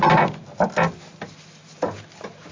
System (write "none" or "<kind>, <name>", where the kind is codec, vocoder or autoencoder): none